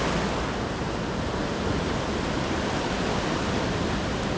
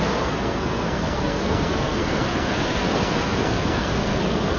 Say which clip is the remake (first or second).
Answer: second